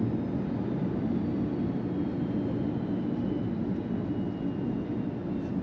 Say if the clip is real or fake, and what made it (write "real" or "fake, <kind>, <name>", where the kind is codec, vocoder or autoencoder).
real